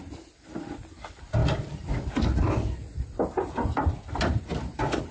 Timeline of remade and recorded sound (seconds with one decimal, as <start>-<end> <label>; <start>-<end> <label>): 0.0-5.1 recorded